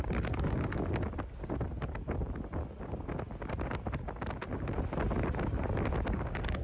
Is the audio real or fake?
real